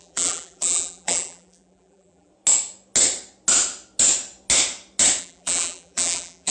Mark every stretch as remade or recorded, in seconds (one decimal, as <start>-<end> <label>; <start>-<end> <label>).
0.0-2.3 remade; 2.3-5.2 recorded; 5.2-6.5 remade